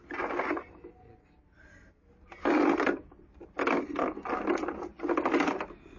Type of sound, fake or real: real